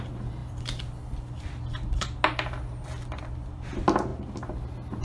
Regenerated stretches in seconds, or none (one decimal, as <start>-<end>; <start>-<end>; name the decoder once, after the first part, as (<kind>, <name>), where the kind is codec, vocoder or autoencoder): none